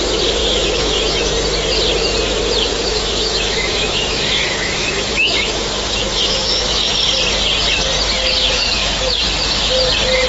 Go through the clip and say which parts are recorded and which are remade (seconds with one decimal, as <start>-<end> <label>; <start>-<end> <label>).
0.0-0.4 recorded; 0.4-1.2 remade; 1.2-2.7 recorded; 2.7-6.9 remade; 6.9-8.6 recorded; 8.6-9.2 remade; 9.2-10.3 recorded

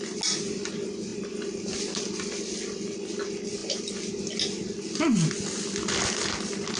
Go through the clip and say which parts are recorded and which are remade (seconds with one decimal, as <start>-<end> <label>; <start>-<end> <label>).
0.0-6.8 recorded

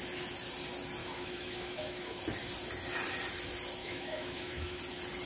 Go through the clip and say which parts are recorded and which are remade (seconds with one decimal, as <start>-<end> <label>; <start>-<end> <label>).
0.0-1.0 recorded; 1.0-2.2 remade; 2.2-3.8 recorded; 3.8-4.8 remade; 4.8-5.2 recorded

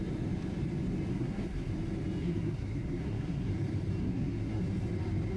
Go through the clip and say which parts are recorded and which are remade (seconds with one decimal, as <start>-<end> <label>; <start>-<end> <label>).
0.0-1.1 recorded; 1.1-1.7 remade; 1.7-2.2 recorded; 2.2-3.5 remade; 3.5-4.0 recorded; 4.0-4.6 remade; 4.6-5.4 recorded

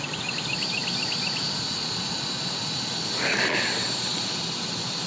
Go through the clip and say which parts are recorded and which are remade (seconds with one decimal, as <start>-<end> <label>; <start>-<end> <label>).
0.0-5.1 recorded